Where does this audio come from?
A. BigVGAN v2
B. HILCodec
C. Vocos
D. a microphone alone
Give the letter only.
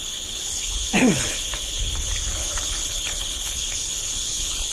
B